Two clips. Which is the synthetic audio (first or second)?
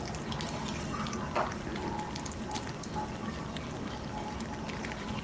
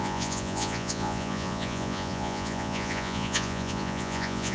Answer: second